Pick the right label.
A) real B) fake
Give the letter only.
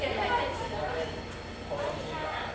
A